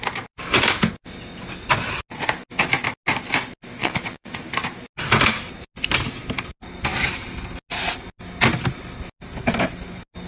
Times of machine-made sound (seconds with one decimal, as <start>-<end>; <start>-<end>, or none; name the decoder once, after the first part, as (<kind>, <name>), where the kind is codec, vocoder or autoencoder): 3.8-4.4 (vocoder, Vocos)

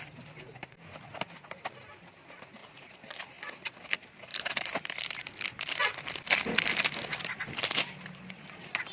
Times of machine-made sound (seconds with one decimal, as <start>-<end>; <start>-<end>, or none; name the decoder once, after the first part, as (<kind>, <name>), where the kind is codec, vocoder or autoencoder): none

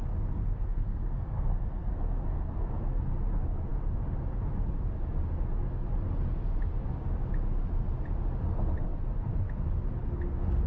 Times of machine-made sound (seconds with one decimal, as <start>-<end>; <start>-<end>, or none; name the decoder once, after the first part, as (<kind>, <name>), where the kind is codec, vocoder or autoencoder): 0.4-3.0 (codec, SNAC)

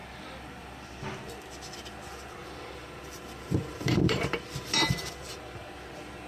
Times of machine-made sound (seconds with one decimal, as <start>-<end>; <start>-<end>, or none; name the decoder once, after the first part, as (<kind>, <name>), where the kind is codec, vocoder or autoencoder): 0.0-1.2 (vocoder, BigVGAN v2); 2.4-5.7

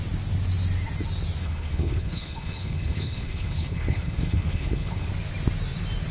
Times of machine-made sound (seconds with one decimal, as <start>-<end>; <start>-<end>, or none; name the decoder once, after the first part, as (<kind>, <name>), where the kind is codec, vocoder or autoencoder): 1.4-5.1 (codec, HILCodec)

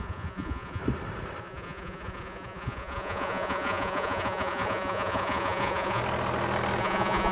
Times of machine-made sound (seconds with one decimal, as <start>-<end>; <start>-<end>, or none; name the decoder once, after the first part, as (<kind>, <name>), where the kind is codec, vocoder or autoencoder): 0.0-0.8 (vocoder, Vocos); 1.4-6.0; 6.8-7.3

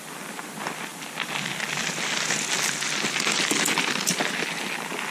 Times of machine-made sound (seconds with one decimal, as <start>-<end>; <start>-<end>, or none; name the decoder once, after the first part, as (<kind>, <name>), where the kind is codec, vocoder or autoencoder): none

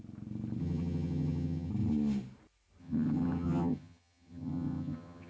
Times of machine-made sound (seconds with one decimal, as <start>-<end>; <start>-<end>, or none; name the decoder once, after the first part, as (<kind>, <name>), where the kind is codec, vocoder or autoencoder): 0.6-1.7 (vocoder, HiFi-GAN); 2.8-5.3